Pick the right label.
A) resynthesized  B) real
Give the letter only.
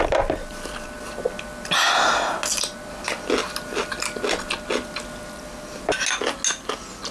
B